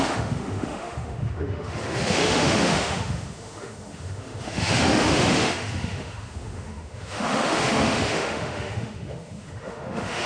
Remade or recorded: remade